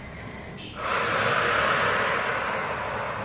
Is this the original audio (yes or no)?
yes